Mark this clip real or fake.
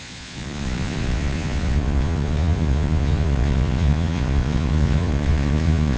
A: fake